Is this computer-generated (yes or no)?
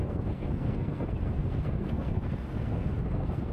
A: yes